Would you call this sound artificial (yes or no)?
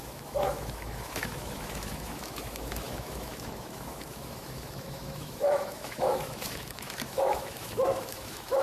yes